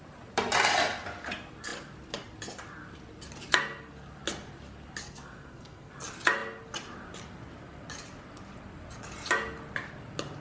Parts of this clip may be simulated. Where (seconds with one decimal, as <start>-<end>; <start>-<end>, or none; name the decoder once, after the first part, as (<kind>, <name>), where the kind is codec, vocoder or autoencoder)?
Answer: 5.0-5.9 (codec, SNAC)